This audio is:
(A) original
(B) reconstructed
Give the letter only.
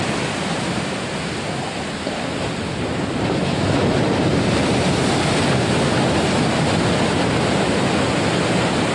A